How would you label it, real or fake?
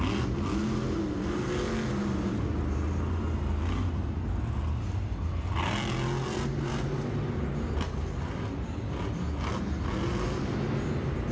real